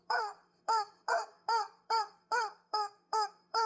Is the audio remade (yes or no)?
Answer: yes